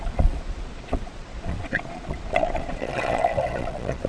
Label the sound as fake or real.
fake